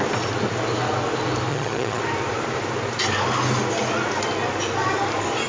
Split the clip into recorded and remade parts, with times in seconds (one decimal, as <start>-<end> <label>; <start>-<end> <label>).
0.0-1.5 recorded; 1.5-2.0 remade; 2.0-5.5 recorded